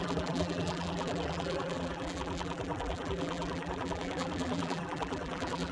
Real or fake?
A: fake